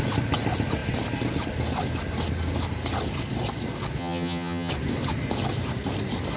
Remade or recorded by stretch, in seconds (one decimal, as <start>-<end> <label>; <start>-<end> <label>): 0.0-4.0 recorded; 4.0-4.7 remade; 4.7-6.4 recorded